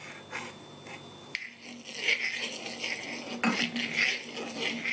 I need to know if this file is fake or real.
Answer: real